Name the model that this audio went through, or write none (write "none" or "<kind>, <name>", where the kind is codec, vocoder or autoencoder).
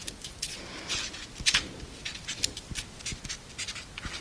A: none